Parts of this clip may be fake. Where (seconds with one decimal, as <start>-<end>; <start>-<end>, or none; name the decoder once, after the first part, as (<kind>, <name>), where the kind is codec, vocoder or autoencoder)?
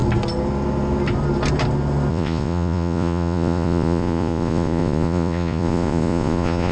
2.1-6.7 (vocoder, Vocos)